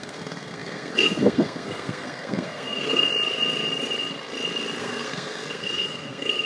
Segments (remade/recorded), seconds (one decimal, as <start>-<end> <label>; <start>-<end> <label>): 0.0-3.1 remade; 3.1-4.8 recorded; 4.8-6.5 remade